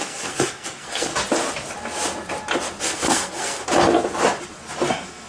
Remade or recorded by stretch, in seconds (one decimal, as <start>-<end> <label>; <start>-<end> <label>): 0.0-1.1 remade; 1.1-2.8 recorded; 2.8-3.6 remade; 3.6-5.3 recorded